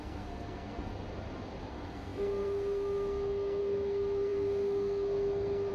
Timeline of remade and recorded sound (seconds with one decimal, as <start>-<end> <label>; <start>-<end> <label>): 0.0-0.9 remade; 0.9-1.7 recorded; 1.7-5.7 remade